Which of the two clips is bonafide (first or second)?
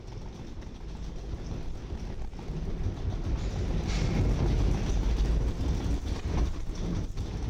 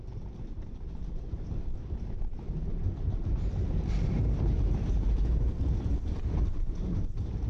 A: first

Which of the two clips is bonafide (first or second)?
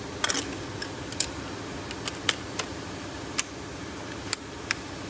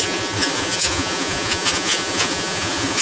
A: first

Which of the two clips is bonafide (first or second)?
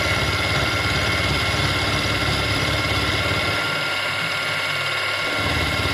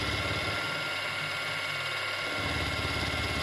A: second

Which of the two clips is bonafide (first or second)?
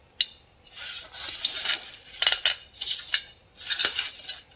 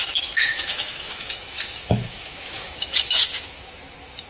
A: first